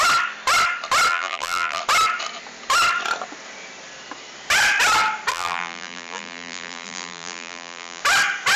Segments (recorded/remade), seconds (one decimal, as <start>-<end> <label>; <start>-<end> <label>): 0.0-1.1 recorded; 1.1-1.8 remade; 1.8-5.3 recorded; 5.3-8.0 remade; 8.0-8.6 recorded